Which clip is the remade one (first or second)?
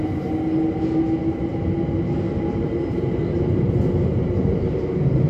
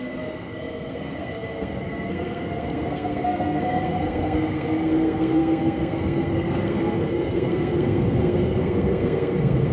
second